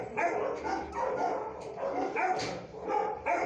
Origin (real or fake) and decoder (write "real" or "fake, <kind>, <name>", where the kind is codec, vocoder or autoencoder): real